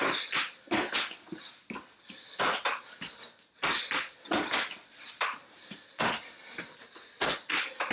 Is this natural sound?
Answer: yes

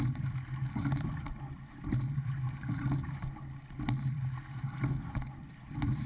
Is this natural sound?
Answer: yes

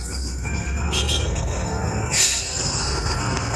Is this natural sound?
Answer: no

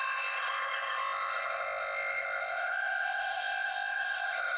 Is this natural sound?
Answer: no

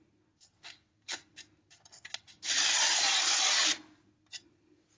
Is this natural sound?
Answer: yes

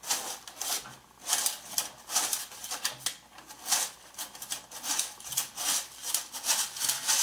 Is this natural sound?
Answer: yes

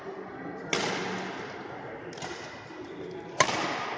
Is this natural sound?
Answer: yes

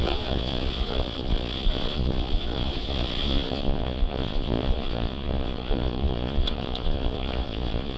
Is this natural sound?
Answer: no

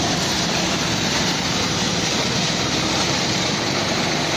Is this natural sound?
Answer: no